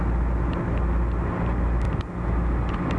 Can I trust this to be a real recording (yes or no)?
yes